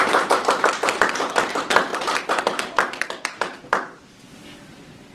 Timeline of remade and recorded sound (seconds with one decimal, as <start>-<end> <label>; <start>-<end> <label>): 0.0-1.9 recorded; 1.9-5.1 remade